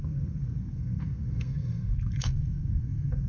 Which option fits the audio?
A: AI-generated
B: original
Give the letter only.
A